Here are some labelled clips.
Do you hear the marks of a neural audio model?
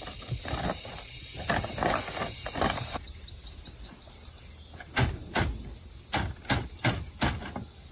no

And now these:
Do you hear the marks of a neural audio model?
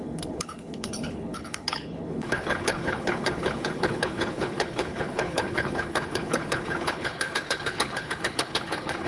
yes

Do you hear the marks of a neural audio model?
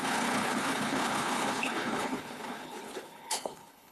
yes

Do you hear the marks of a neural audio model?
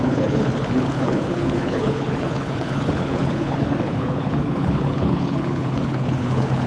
yes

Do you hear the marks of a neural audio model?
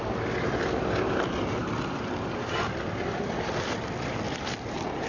no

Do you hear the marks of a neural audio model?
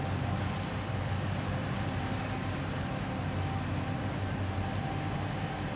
no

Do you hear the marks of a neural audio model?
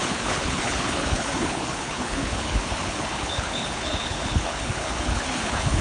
yes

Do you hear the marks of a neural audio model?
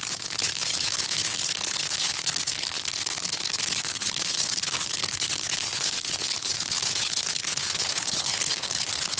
yes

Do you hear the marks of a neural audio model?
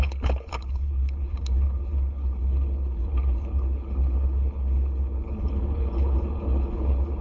yes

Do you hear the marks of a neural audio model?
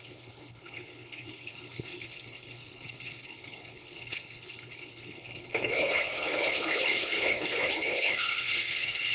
yes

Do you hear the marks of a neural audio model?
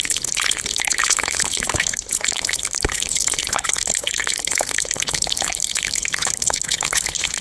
yes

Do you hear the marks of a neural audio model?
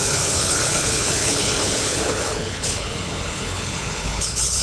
yes